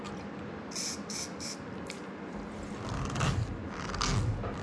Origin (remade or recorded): recorded